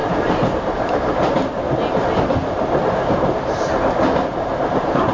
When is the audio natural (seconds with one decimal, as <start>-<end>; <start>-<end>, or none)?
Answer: 1.2-5.1